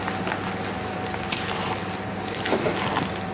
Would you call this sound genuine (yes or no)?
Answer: yes